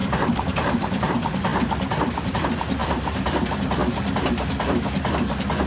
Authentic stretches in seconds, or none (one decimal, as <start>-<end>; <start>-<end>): 1.1-5.7